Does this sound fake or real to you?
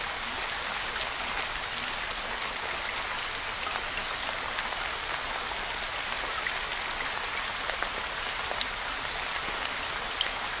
real